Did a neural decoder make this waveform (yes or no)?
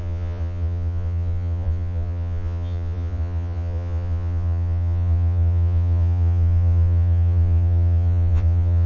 yes